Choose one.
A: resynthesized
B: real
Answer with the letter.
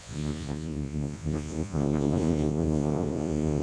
A